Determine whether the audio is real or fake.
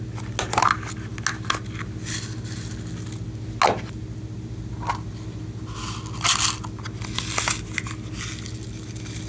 real